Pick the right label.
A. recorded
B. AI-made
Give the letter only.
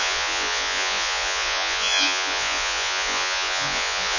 B